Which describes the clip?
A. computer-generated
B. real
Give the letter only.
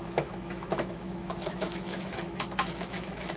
A